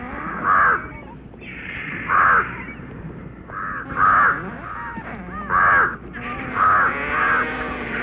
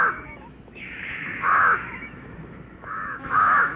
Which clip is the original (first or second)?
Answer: first